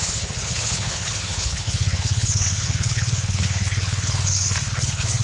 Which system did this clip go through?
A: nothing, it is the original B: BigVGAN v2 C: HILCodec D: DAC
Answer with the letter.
C